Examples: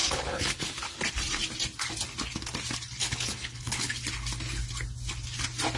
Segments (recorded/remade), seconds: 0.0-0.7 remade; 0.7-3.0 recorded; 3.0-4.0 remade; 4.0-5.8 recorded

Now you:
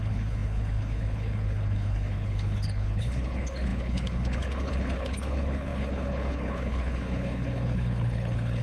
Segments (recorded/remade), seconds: 0.0-8.6 remade

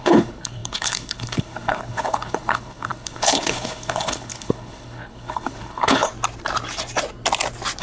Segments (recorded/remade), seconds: 0.0-6.1 remade; 6.1-7.8 recorded

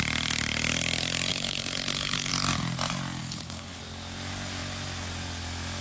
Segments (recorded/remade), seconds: 0.0-1.3 recorded; 1.3-2.3 remade; 2.3-3.2 recorded; 3.2-3.8 remade; 3.8-5.8 recorded

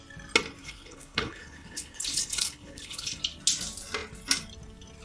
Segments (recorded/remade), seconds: 0.0-0.6 recorded; 0.6-3.2 remade; 3.2-5.0 recorded

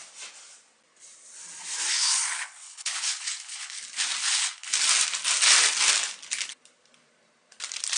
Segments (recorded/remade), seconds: 0.0-1.9 recorded; 1.9-3.8 remade; 3.8-4.2 recorded; 4.2-4.7 remade; 4.7-8.0 recorded